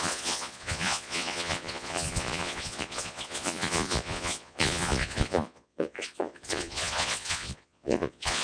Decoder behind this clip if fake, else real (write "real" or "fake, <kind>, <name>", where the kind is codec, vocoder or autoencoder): fake, vocoder, Vocos